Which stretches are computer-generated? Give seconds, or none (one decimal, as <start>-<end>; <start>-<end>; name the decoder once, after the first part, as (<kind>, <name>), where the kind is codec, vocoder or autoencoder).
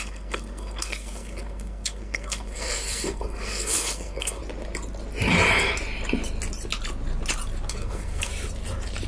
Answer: 0.0-4.4 (codec, SNAC); 7.7-8.3